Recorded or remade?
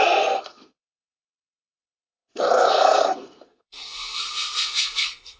remade